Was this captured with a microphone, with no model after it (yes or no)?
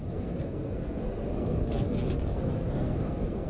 no